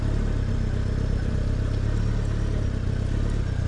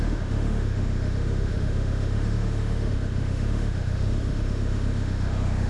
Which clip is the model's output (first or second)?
second